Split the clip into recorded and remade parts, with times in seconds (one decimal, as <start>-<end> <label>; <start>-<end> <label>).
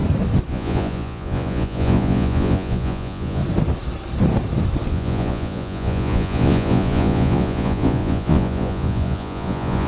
0.0-0.5 recorded; 0.5-3.4 remade; 3.4-4.9 recorded; 4.9-9.9 remade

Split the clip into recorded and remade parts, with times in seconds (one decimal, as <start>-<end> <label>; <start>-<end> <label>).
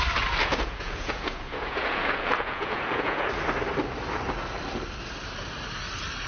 0.0-0.4 recorded; 0.4-3.3 remade; 3.3-6.3 recorded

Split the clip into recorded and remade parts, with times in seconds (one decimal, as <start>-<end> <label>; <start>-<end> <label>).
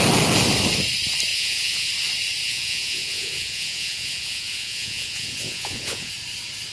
0.0-1.3 recorded; 1.3-1.9 remade; 1.9-2.4 recorded; 2.4-6.1 remade; 6.1-6.7 recorded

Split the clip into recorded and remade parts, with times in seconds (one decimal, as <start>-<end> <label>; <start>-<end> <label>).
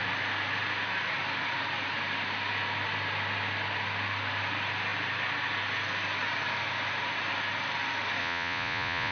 0.0-8.2 recorded; 8.2-9.1 remade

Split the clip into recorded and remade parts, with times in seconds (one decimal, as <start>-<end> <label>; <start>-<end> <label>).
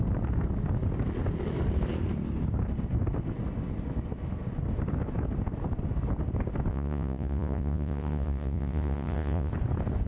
0.0-6.7 recorded; 6.7-9.5 remade; 9.5-10.1 recorded